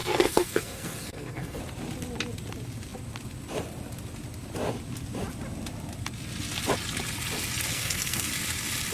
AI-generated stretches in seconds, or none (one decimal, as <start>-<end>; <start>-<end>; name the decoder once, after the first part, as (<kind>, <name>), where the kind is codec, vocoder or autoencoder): 0.0-1.6 (codec, SNAC); 7.7-8.3